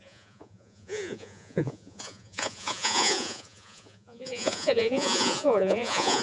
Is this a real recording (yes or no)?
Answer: no